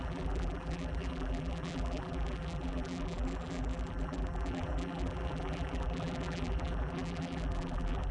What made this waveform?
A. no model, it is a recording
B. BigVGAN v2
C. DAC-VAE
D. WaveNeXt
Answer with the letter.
B